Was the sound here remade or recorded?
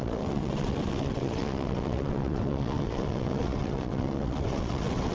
remade